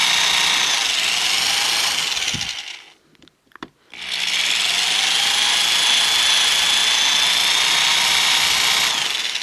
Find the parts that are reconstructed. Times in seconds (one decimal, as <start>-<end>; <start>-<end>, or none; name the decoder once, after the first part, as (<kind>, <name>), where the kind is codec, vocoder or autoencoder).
none